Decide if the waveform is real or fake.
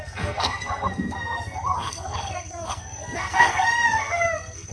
fake